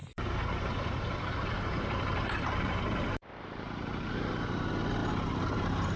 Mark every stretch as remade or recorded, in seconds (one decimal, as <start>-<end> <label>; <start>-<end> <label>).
0.0-3.6 remade; 3.6-5.0 recorded; 5.0-6.0 remade